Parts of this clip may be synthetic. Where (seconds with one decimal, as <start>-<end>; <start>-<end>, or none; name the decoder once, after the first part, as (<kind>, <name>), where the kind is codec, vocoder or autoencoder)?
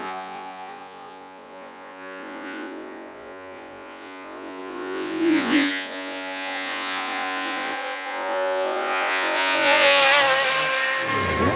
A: 0.0-10.0 (vocoder, Vocos)